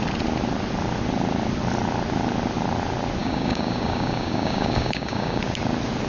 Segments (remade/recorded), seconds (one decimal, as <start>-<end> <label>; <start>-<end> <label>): 0.0-3.2 recorded; 3.2-5.4 remade; 5.4-6.1 recorded

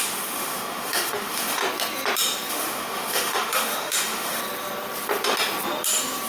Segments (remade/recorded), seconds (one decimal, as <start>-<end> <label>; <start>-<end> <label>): 0.0-1.6 remade; 1.6-2.5 recorded; 2.5-4.4 remade; 4.4-6.3 recorded

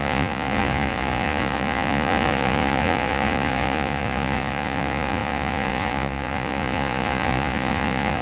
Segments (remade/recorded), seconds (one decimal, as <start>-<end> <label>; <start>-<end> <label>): 0.0-8.2 remade